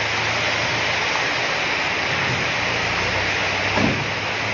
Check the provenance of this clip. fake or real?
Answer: real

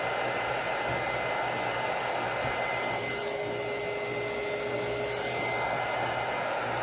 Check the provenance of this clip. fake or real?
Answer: real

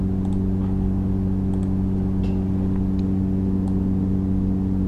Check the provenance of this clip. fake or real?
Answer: real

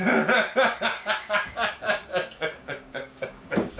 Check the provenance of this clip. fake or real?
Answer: fake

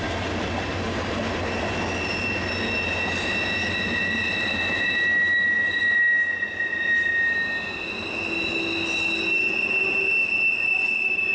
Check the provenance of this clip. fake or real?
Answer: real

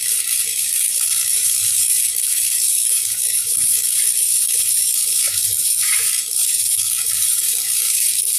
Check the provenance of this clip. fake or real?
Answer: fake